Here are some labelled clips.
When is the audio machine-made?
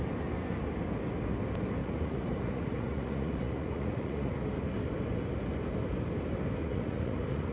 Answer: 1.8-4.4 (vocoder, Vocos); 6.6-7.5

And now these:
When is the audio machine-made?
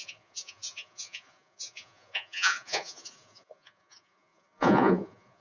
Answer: 0.0-5.4 (vocoder, Vocos)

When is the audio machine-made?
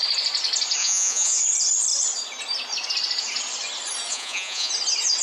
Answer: 0.8-1.4 (vocoder, Vocos); 4.1-4.7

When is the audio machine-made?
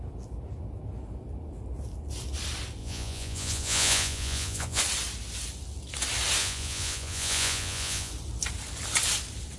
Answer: 2.8-4.8 (vocoder, Vocos); 6.4-8.1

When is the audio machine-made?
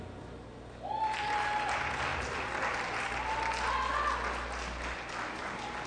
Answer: none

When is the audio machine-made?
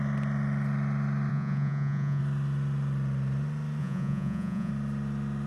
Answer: 1.3-2.2 (vocoder, Vocos); 3.8-4.7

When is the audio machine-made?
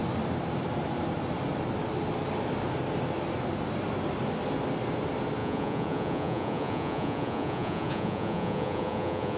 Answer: 5.4-9.4 (vocoder, Vocos)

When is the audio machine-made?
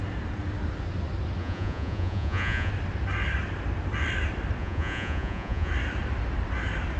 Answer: 1.4-2.7 (vocoder, Vocos); 4.6-5.7